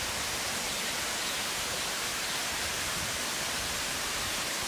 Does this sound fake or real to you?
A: fake